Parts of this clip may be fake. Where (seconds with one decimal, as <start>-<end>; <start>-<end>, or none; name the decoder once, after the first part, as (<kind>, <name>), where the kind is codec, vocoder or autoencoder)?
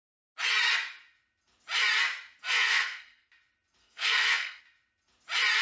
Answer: 2.4-3.3 (codec, SNAC); 3.8-4.6